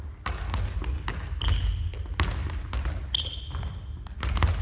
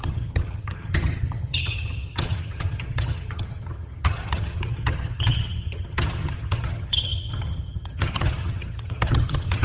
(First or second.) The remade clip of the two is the second